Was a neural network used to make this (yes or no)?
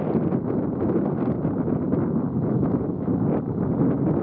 no